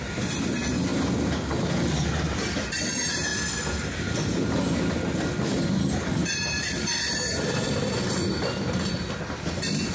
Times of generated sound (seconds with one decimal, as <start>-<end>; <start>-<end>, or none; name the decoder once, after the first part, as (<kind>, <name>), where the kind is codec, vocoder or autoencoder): none